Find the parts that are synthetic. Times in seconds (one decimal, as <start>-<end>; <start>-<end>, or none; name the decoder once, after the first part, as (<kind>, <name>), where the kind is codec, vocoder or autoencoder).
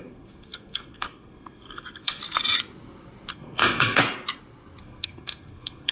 0.0-2.2 (codec, SNAC); 3.3-4.0; 4.8-5.9